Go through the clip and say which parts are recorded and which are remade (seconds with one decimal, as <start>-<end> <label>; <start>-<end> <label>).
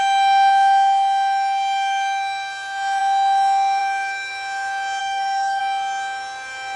0.0-5.0 recorded; 5.0-5.6 remade; 5.6-6.8 recorded